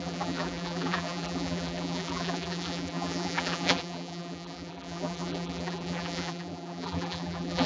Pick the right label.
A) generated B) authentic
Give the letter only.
A